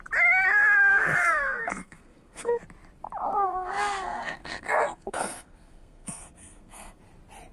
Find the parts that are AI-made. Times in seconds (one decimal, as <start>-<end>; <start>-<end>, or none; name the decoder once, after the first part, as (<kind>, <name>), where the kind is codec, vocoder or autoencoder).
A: 0.9-2.6 (codec, SNAC); 3.3-7.0